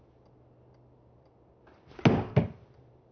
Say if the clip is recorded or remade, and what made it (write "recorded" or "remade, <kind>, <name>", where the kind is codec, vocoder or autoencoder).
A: recorded